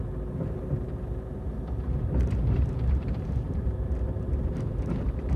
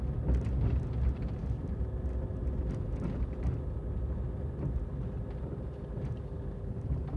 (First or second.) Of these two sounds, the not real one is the first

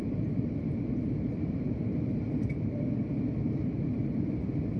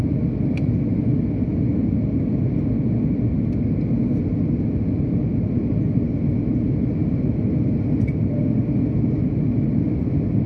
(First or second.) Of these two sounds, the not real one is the first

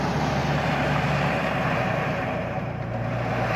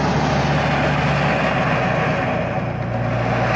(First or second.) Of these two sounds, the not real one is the first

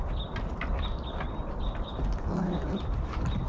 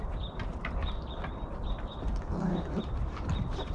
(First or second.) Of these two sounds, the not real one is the second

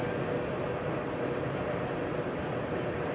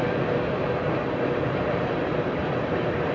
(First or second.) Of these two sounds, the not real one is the second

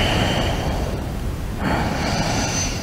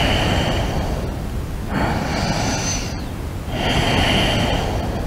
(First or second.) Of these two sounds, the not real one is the first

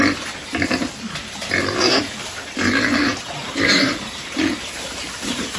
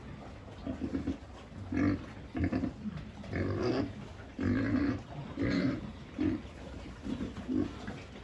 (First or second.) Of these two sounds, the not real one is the first